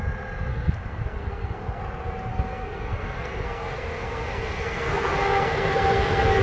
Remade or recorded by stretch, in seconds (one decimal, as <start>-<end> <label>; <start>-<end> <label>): 0.0-0.5 recorded; 0.5-1.8 remade; 1.8-2.3 recorded; 2.3-6.4 remade